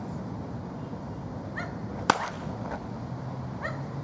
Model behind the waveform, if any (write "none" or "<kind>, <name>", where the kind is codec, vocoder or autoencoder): none